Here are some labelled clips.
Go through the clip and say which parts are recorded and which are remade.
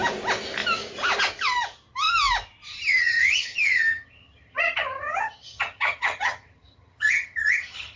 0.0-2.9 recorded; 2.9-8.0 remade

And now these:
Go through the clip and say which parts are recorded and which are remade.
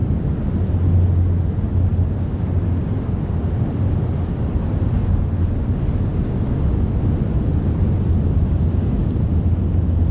0.0-0.6 remade; 0.6-1.9 recorded; 1.9-2.8 remade; 2.8-6.1 recorded; 6.1-8.3 remade; 8.3-10.1 recorded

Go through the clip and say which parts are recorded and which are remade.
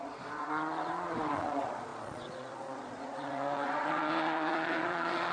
0.0-5.3 remade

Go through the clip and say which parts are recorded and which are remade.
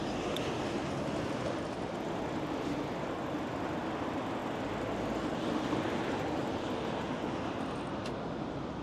0.0-8.8 recorded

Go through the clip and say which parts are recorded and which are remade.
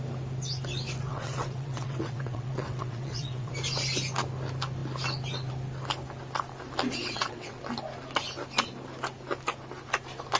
0.0-1.1 recorded; 1.1-3.5 remade; 3.5-7.0 recorded; 7.0-7.6 remade; 7.6-10.4 recorded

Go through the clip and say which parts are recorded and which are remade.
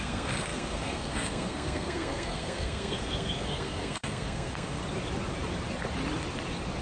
0.0-4.8 remade; 4.8-6.8 recorded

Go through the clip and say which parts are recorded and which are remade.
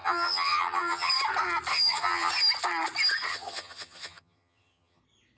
0.0-1.1 remade; 1.1-1.7 recorded; 1.7-2.3 remade; 2.3-3.3 recorded; 3.3-5.0 remade; 5.0-5.4 recorded